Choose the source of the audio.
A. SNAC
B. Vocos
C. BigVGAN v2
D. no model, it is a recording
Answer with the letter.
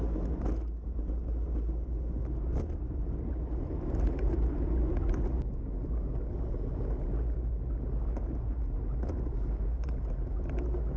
D